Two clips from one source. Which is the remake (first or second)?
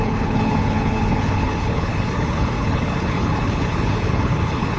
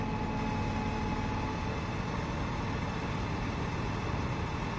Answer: first